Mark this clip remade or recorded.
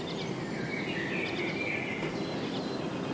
recorded